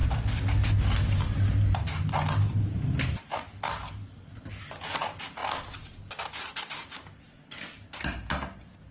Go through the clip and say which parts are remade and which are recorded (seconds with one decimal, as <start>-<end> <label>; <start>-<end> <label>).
0.0-8.9 recorded

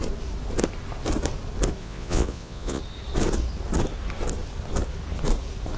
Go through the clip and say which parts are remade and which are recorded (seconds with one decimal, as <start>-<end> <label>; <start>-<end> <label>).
0.0-1.8 recorded; 1.8-2.8 remade; 2.8-5.8 recorded

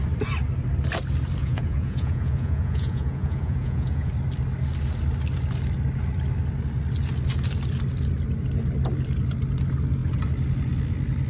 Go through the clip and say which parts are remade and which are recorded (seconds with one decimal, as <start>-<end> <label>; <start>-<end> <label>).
0.0-1.4 recorded; 1.4-4.1 remade; 4.1-11.3 recorded

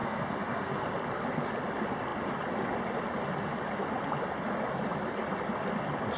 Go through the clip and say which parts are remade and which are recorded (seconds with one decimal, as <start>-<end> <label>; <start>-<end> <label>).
0.0-0.9 remade; 0.9-6.2 recorded

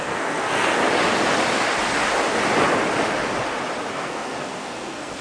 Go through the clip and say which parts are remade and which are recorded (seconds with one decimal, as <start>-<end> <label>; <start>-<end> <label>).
0.0-0.8 remade; 0.8-3.9 recorded; 3.9-5.2 remade

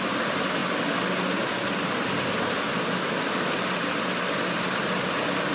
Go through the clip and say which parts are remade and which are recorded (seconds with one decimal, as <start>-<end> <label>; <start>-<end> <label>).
0.0-5.5 recorded

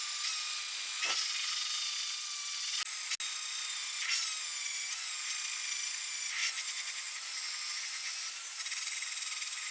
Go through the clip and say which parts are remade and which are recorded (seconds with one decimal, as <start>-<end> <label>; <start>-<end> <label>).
0.0-4.6 recorded; 4.6-5.1 remade; 5.1-6.4 recorded; 6.4-8.3 remade; 8.3-9.7 recorded